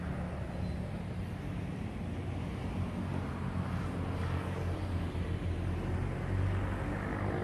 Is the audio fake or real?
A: real